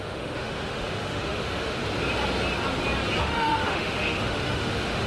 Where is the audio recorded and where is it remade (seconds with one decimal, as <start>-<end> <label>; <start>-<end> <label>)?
0.0-1.8 remade; 1.8-3.2 recorded; 3.2-5.1 remade